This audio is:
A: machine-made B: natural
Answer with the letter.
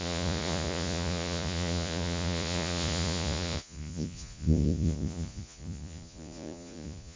A